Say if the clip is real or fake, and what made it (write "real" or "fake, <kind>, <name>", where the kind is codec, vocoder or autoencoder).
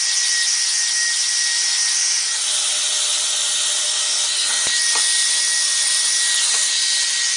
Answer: real